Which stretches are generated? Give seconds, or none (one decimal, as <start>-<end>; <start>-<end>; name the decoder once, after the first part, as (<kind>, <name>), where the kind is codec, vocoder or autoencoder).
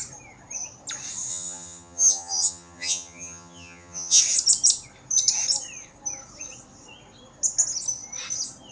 1.3-4.2 (vocoder, HiFi-GAN)